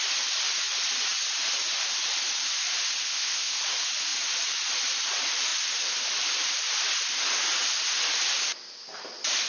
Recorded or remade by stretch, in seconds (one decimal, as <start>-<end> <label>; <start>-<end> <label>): 0.0-3.0 recorded; 3.0-3.6 remade; 3.6-9.5 recorded